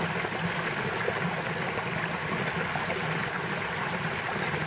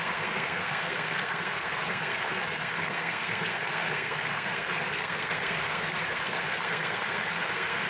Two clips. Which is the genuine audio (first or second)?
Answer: first